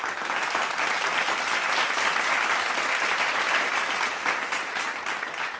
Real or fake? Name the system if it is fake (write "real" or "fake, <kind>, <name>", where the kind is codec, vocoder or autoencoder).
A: real